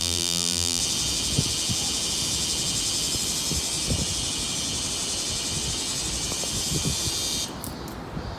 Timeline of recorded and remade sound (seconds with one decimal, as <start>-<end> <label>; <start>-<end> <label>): 0.0-0.8 remade; 0.8-8.4 recorded